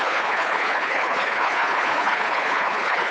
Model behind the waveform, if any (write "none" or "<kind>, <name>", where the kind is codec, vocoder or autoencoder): codec, HILCodec